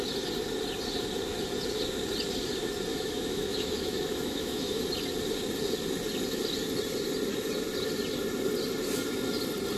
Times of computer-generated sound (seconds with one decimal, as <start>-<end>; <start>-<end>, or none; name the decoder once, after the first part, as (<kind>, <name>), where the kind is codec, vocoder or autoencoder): 2.9-4.8 (autoencoder, DAC-VAE)